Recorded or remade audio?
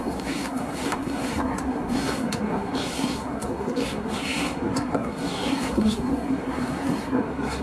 remade